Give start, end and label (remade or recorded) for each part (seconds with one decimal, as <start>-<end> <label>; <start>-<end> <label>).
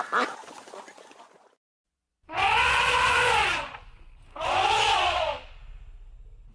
0.0-0.4 recorded; 0.4-4.1 remade; 4.1-6.5 recorded